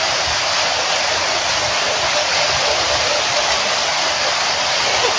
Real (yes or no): yes